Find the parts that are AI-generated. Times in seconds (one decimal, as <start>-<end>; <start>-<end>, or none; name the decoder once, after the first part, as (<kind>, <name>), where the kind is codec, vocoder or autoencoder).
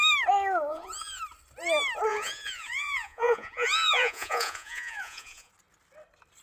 0.7-1.2 (vocoder, Vocos); 2.1-5.5